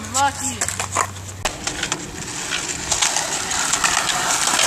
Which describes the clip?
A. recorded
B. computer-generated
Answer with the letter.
A